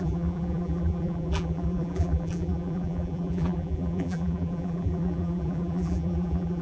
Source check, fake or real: fake